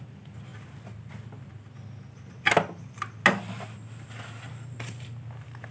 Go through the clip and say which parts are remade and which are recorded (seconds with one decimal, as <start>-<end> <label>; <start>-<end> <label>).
0.0-5.7 recorded